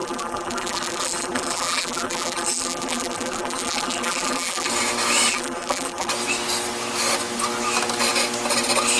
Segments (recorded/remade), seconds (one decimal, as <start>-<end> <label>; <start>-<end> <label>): 0.0-4.7 remade; 4.7-5.3 recorded; 5.3-6.1 remade; 6.1-9.0 recorded